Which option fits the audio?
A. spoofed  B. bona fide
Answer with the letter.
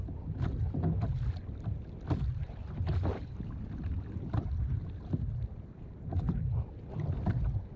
B